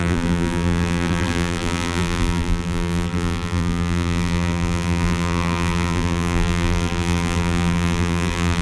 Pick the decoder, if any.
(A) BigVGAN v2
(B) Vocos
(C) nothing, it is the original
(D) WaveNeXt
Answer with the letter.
A